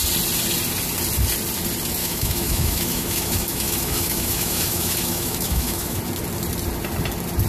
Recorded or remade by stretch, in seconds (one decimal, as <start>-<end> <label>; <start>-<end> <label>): 0.0-2.0 recorded; 2.0-6.0 remade; 6.0-7.5 recorded

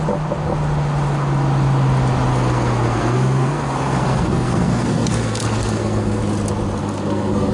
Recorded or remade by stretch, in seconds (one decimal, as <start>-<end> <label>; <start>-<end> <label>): 0.0-2.3 recorded; 2.3-6.2 remade; 6.2-6.8 recorded; 6.8-7.5 remade

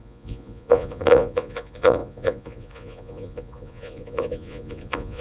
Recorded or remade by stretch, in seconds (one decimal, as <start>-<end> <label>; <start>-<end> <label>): 0.0-5.2 remade